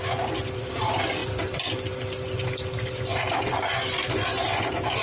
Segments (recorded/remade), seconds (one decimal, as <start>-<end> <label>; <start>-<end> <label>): 0.0-5.0 remade